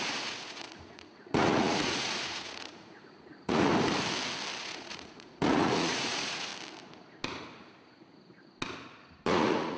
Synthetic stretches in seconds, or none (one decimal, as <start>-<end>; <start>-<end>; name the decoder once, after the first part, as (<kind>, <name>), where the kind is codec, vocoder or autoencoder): 0.0-3.7 (vocoder, Vocos); 4.6-6.5; 9.2-9.8